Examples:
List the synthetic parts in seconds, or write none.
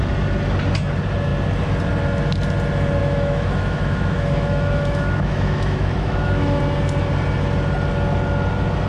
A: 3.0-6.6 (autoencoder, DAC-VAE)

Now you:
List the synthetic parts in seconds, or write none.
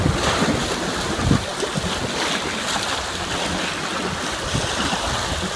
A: none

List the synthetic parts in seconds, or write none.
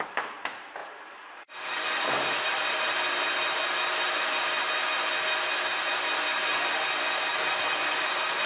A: none